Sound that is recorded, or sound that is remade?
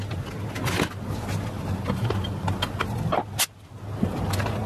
recorded